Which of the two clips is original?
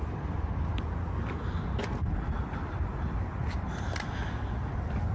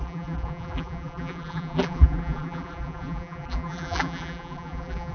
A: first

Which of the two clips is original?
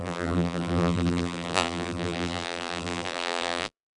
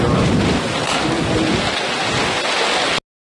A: second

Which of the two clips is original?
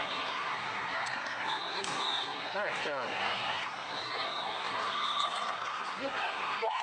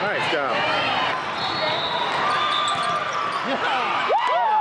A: second